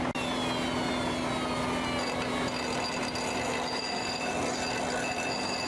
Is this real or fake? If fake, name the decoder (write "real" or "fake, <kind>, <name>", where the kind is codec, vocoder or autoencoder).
real